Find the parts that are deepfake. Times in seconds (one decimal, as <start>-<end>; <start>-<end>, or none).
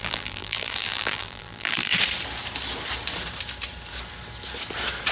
0.0-1.9